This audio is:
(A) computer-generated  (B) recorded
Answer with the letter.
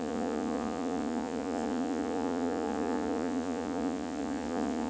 A